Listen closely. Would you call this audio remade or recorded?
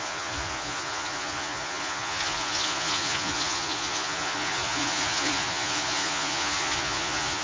remade